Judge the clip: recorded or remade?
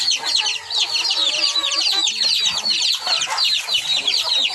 recorded